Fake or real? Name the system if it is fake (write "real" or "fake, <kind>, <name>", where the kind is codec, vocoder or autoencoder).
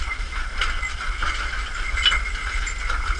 real